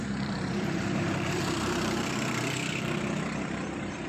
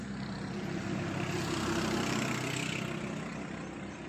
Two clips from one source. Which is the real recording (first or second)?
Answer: second